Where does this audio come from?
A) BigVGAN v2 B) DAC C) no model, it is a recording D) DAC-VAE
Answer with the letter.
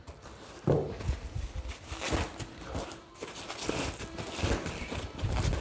C